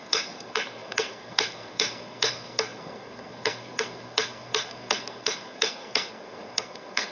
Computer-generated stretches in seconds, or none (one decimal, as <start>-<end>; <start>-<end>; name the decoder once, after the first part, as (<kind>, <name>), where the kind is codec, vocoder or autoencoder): 0.0-7.1 (codec, SNAC)